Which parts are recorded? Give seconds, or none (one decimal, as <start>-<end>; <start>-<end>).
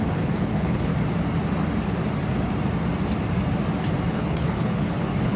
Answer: 0.9-4.1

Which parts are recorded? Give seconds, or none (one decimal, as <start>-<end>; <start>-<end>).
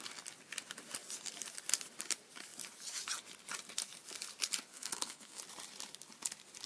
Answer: 0.0-4.7; 5.4-6.7